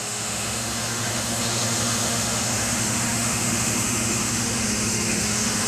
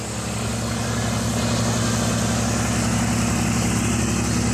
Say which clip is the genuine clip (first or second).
second